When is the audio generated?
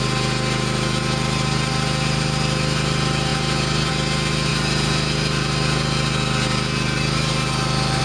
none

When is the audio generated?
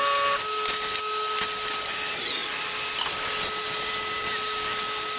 none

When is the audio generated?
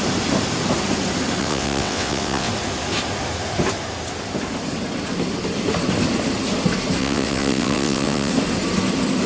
1.4-2.5 (vocoder, WaveNeXt); 7.0-8.3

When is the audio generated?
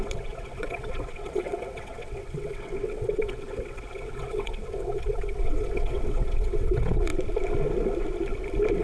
0.0-7.1 (vocoder, WaveNeXt)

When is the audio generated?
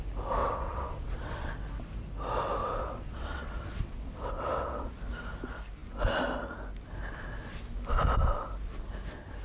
0.4-1.5 (vocoder, WaveNeXt); 2.6-4.9